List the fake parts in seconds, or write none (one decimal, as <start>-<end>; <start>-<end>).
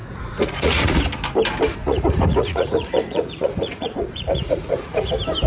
0.0-1.0; 1.8-5.1